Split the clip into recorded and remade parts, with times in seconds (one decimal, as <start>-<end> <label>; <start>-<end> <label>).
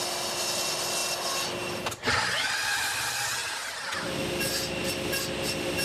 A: 0.0-5.8 recorded